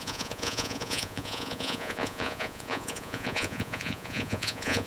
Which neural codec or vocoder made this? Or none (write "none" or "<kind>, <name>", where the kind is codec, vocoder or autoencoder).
vocoder, Vocos